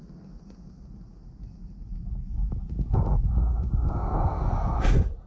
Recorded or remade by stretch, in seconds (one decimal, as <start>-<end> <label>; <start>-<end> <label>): 0.0-3.4 recorded; 3.4-4.5 remade; 4.5-5.3 recorded